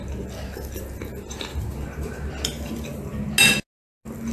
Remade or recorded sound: recorded